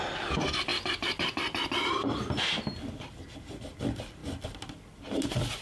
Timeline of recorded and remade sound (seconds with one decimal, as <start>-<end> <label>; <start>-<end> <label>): 0.0-5.6 recorded